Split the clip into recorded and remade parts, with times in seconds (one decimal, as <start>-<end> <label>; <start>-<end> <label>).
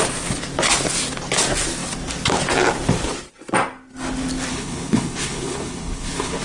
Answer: 0.0-4.5 recorded; 4.5-6.4 remade